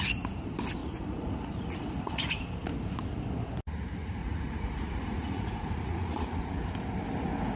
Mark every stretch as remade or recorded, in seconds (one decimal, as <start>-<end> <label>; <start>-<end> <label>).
0.0-0.8 recorded; 0.8-2.4 remade; 2.4-4.2 recorded; 4.2-6.2 remade; 6.2-7.6 recorded